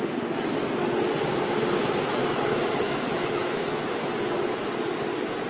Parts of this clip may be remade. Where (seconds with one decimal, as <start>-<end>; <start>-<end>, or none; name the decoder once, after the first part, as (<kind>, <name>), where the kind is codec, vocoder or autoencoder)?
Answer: 2.2-3.9 (autoencoder, DAC-VAE)